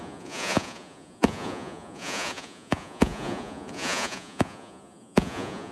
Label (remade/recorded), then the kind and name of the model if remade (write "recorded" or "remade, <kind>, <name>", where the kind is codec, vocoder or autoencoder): remade, vocoder, Vocos